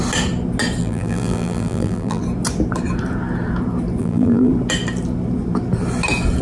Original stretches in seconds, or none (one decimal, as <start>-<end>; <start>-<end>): 0.0-0.8; 2.2-4.0; 4.5-6.4